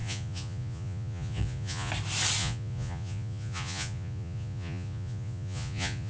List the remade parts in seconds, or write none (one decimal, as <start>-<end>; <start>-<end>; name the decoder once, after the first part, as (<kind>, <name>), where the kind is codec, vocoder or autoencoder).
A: 0.0-1.9 (vocoder, Vocos); 2.4-6.1